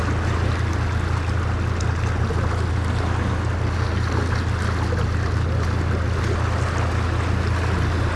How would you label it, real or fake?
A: real